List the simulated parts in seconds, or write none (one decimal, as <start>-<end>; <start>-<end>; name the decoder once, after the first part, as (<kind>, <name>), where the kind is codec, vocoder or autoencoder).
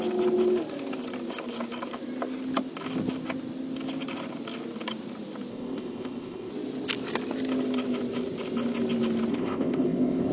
5.5-6.5 (codec, ZipCodec); 9.3-10.3